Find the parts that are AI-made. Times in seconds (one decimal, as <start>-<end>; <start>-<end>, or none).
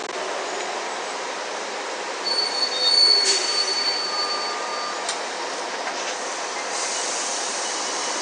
2.5-4.7; 6.0-8.2